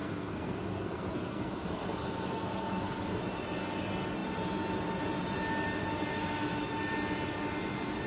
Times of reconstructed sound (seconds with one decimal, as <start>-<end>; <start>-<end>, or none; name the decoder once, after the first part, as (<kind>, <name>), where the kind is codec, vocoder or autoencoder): 0.0-3.2 (codec, SNAC)